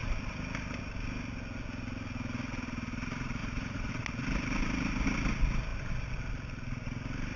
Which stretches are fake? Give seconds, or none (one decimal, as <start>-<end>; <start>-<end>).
3.4-3.9